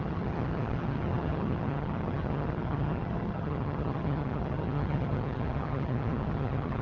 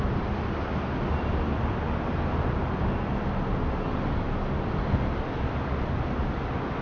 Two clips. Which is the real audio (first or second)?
second